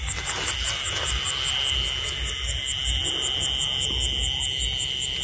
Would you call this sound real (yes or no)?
yes